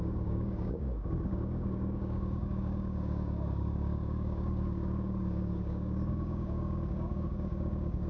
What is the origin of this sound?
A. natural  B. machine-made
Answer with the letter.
B